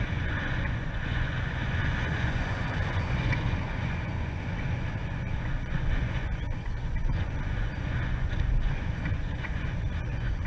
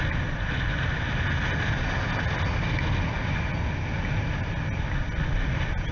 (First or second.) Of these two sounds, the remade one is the first